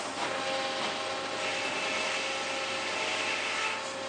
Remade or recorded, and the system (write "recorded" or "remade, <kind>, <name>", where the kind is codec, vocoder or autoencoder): recorded